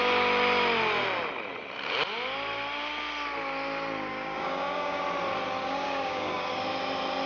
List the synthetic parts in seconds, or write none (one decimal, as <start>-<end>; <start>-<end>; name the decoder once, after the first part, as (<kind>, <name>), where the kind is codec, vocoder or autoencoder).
4.1-5.0 (codec, DAC); 5.6-6.5